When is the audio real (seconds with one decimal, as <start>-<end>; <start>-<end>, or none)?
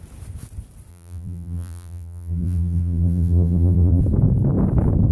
0.0-0.9; 4.0-5.1